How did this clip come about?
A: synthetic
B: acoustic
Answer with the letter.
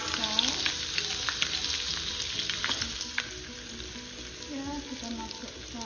B